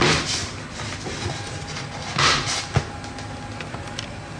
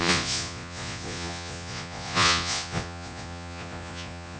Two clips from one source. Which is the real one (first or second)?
first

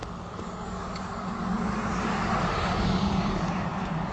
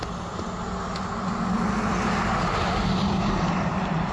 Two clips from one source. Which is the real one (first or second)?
second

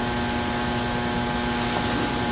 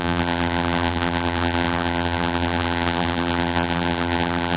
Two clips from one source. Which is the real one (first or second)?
first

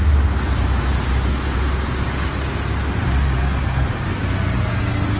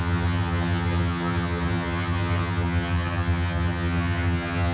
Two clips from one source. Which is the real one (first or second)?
first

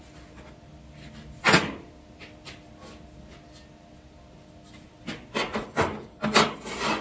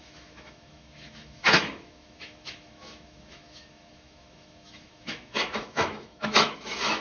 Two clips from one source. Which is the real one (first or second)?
first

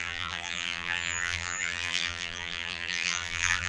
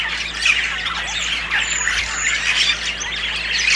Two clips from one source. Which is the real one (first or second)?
second